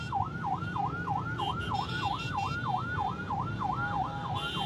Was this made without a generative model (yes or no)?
yes